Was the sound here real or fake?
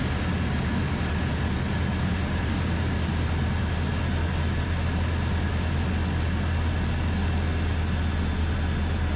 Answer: real